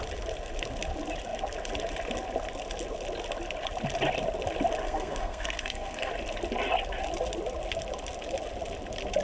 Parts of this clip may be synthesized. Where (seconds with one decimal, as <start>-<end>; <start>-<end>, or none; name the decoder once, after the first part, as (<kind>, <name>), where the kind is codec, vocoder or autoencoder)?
4.8-6.1 (codec, SNAC)